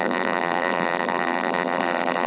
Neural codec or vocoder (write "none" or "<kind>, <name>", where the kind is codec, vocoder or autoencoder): vocoder, BigVGAN v2